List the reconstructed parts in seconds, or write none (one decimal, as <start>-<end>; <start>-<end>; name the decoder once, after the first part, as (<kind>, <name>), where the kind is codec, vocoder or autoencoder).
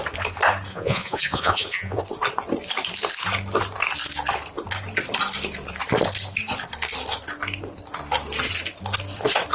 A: 0.7-2.0 (vocoder, Vocos)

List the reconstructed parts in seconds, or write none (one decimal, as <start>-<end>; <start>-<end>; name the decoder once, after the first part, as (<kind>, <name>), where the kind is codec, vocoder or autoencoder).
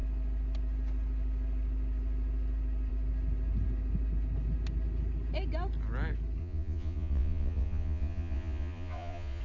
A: 6.4-9.4 (vocoder, Vocos)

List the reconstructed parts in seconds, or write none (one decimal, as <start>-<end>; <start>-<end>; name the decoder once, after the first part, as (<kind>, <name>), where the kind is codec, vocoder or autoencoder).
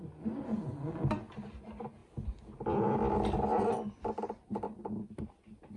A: none